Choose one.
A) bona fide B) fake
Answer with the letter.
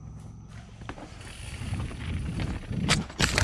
A